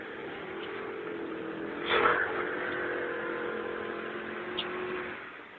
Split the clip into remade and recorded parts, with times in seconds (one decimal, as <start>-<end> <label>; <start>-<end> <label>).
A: 0.0-5.6 recorded